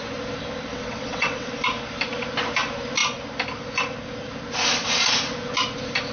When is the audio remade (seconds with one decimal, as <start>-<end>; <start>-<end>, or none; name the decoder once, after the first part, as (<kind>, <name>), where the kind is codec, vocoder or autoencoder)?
0.7-1.5 (vocoder, WaveNeXt)